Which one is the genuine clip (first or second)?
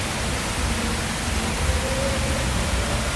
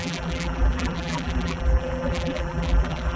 first